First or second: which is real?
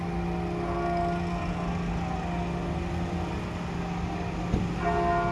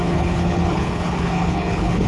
first